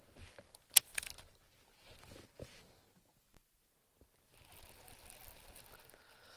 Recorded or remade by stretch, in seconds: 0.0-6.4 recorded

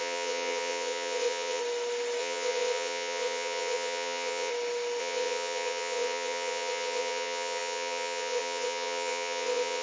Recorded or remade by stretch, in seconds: 0.0-1.6 remade; 1.6-2.2 recorded; 2.2-4.5 remade; 4.5-5.0 recorded; 5.0-9.8 remade